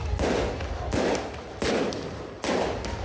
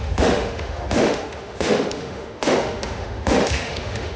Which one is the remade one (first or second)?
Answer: second